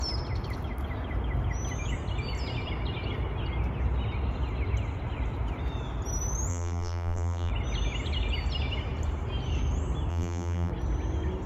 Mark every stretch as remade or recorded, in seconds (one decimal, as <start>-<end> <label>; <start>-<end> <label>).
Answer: 0.0-6.5 recorded; 6.5-7.5 remade; 7.5-10.1 recorded; 10.1-10.7 remade; 10.7-11.5 recorded